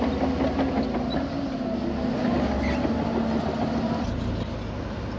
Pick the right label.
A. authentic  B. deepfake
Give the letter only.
A